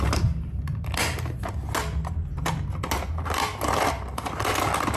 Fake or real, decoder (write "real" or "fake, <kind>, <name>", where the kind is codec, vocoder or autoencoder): real